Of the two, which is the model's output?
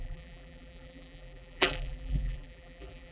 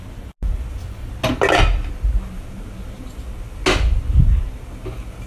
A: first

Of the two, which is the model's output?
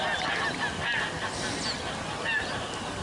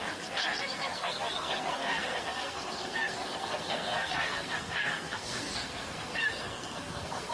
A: second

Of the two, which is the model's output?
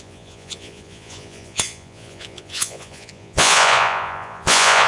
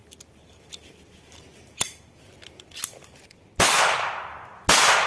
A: first